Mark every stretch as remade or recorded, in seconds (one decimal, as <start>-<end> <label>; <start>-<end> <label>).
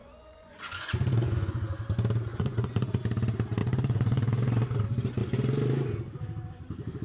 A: 0.0-1.8 remade; 1.8-2.3 recorded; 2.3-3.0 remade; 3.0-3.6 recorded; 3.6-4.6 remade; 4.6-7.0 recorded